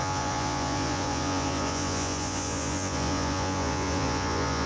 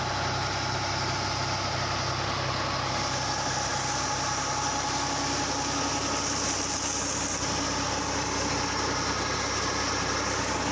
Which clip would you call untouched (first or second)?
second